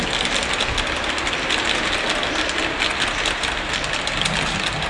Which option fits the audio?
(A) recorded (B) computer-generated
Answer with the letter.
A